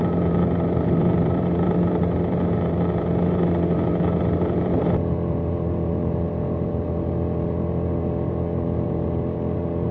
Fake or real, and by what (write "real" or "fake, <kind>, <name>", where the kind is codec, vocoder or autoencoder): fake, vocoder, BigVGAN v2